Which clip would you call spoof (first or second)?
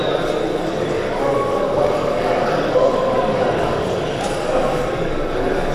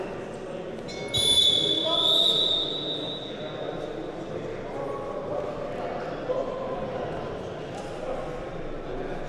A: first